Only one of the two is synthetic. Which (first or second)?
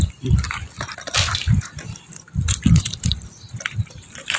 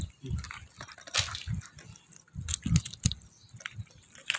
first